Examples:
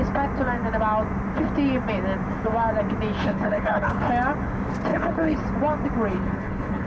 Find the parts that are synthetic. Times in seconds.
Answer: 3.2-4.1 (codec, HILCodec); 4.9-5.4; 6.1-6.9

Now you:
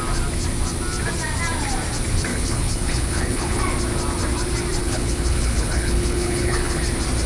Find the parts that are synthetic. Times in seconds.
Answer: 2.3-3.6 (codec, HILCodec); 4.8-6.8

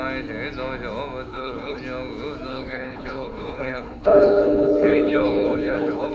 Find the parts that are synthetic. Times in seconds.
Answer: 1.3-1.8 (codec, HILCodec); 2.5-6.1

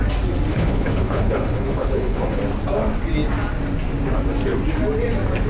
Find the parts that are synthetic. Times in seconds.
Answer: 0.5-2.4 (codec, HILCodec)

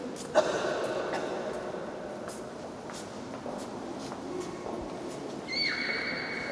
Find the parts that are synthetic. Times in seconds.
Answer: none

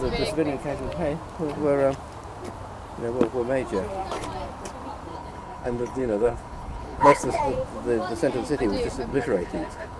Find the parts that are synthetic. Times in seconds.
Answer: 5.1-7.4 (codec, HILCodec); 9.1-10.0